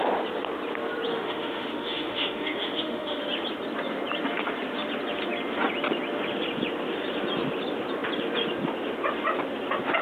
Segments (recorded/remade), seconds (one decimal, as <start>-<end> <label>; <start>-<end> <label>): 0.0-1.1 recorded; 1.1-3.2 remade; 3.2-10.0 recorded